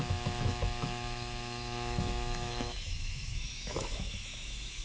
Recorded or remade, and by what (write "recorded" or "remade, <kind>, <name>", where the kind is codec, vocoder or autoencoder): remade, autoencoder, DAC-VAE